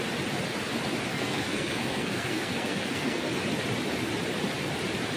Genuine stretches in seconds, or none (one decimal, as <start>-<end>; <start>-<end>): 0.0-1.1; 3.3-5.2